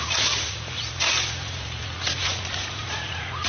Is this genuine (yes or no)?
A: no